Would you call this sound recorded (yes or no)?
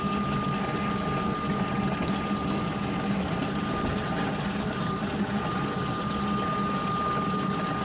yes